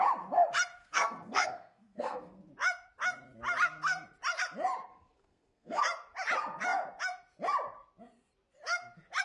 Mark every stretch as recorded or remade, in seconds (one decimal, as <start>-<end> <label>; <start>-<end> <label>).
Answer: 0.0-0.8 recorded; 0.8-2.4 remade; 2.4-4.9 recorded; 4.9-5.8 remade; 5.8-9.2 recorded